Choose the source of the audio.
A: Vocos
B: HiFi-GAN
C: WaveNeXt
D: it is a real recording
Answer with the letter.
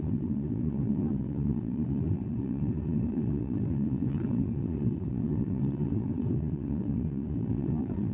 C